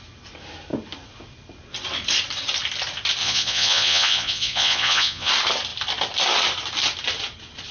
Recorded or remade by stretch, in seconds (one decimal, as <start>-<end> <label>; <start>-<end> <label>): 0.0-3.2 recorded; 3.2-5.3 remade; 5.3-7.7 recorded